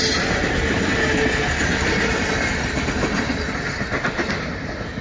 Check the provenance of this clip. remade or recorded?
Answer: recorded